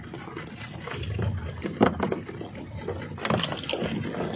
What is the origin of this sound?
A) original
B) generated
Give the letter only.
A